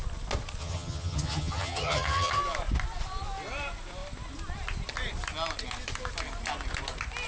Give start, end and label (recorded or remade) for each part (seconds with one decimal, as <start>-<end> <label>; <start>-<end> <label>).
0.0-0.6 recorded; 0.6-2.4 remade; 2.4-7.3 recorded